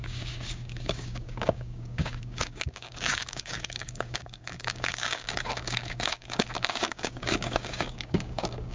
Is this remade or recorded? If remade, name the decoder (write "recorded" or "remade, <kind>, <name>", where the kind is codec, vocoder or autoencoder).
remade, codec, DAC